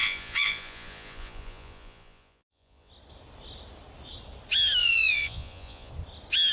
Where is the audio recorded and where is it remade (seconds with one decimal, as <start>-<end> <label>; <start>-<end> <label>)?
0.0-2.9 remade; 2.9-4.8 recorded; 4.8-5.9 remade; 5.9-6.5 recorded

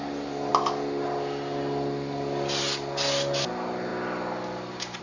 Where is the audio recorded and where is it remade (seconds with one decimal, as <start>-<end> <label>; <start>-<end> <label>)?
0.0-5.0 recorded

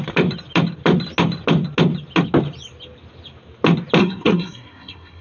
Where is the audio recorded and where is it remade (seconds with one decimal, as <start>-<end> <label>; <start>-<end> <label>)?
0.0-4.0 recorded; 4.0-5.2 remade

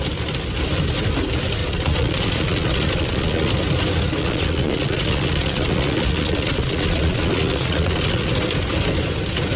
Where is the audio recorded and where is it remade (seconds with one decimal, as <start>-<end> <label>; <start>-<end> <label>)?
0.0-1.6 recorded; 1.6-3.5 remade; 3.5-4.2 recorded; 4.2-8.3 remade; 8.3-9.6 recorded

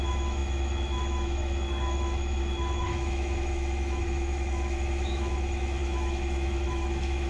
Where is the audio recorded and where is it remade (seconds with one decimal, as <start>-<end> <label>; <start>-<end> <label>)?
0.0-7.3 remade

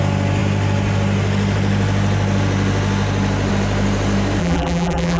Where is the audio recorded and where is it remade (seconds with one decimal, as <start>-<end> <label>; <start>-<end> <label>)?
0.0-4.4 recorded; 4.4-5.2 remade

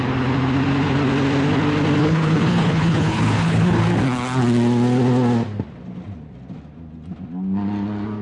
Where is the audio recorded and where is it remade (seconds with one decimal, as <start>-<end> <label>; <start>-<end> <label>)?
0.0-2.0 recorded; 2.0-3.8 remade; 3.8-8.2 recorded